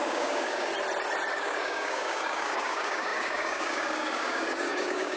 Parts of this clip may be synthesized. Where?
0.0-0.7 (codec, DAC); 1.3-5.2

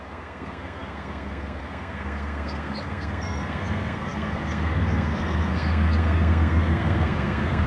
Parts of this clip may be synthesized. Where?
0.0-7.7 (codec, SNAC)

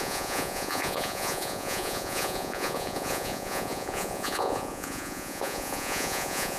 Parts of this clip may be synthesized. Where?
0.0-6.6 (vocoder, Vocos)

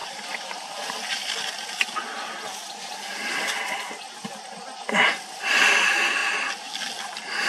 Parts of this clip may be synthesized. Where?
0.0-0.9 (vocoder, BigVGAN v2); 3.1-3.8; 6.2-6.9

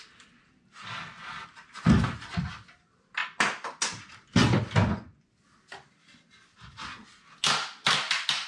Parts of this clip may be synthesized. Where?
4.8-5.3 (vocoder, Vocos)

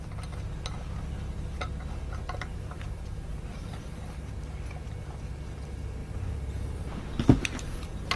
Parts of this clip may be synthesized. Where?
2.5-4.3 (vocoder, BigVGAN v2); 6.0-8.2

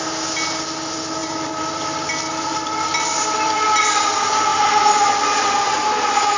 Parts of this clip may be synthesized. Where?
1.2-3.6 (vocoder, BigVGAN v2); 4.5-5.1

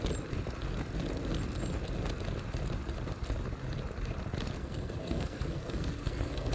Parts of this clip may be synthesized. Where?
4.6-6.5 (codec, SNAC)